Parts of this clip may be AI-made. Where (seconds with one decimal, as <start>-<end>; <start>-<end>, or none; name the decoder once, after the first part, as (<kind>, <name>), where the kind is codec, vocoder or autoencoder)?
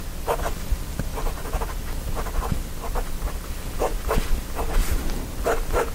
none